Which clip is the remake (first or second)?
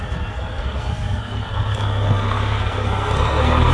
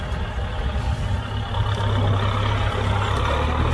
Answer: first